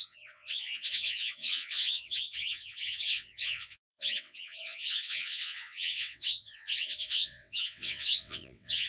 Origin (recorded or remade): remade